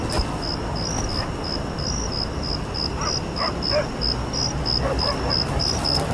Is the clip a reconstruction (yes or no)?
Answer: no